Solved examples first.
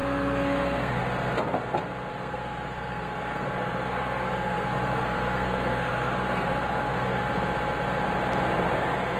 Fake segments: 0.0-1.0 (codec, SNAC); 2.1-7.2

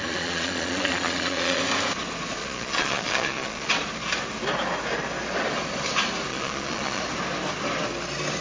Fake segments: 0.0-1.6 (vocoder, Vocos); 2.4-3.7; 6.3-7.0

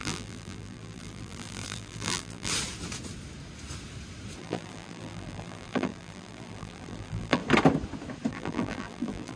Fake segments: 0.0-2.5 (vocoder, BigVGAN v2); 4.4-7.4; 8.3-9.4

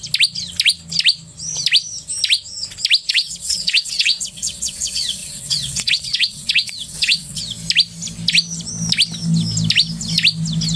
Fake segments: 3.1-7.4 (vocoder, WaveNeXt)